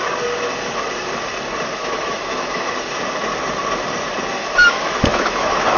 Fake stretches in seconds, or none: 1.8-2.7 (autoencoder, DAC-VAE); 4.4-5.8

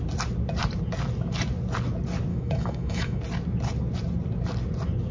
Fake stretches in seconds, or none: 2.3-3.2 (autoencoder, DAC-VAE)

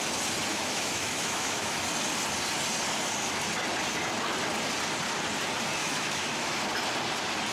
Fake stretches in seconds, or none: 0.5-1.8 (autoencoder, DAC-VAE); 5.8-6.6

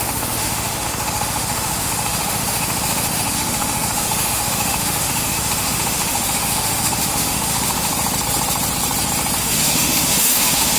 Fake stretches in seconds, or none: 0.0-7.9 (autoencoder, DAC-VAE); 9.4-10.8